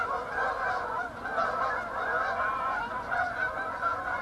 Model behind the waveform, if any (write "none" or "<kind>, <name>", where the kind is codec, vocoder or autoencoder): vocoder, Vocos